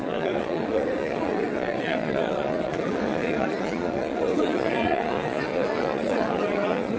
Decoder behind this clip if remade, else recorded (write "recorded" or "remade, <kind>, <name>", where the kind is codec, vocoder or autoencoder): remade, vocoder, Vocos